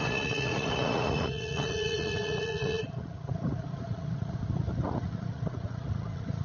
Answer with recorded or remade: remade